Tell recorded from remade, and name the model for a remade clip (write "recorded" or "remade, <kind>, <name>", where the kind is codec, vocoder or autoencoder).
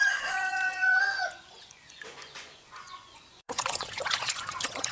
remade, vocoder, Vocos